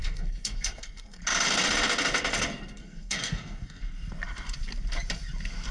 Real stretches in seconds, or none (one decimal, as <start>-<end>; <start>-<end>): 1.2-2.5; 3.8-5.7